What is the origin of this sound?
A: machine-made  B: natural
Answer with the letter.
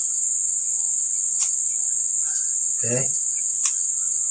B